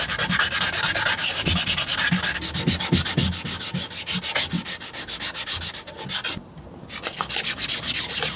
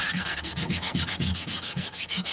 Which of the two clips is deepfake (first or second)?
second